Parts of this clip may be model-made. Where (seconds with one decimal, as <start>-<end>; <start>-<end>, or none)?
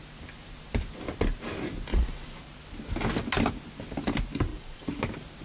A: 1.9-2.4; 4.5-5.0